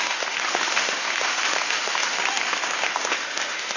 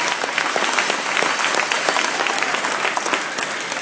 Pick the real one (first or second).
second